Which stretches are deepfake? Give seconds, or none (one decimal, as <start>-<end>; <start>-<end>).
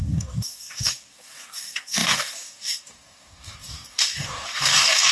0.0-5.1